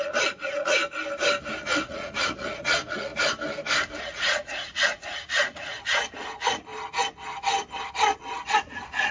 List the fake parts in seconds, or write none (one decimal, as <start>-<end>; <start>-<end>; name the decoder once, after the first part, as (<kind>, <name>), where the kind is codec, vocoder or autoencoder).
0.0-0.8 (vocoder, Vocos); 1.6-3.1; 4.0-6.7; 8.6-9.1